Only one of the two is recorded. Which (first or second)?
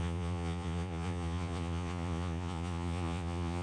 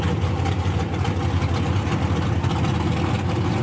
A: second